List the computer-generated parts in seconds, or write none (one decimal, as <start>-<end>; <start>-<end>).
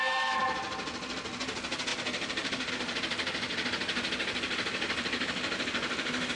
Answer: 1.9-2.7